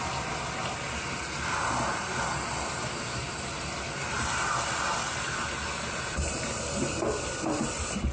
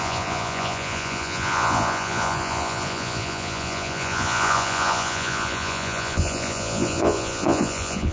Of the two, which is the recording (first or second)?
first